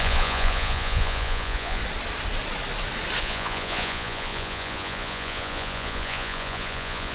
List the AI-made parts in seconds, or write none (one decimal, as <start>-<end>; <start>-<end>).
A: 0.0-1.8; 3.2-7.1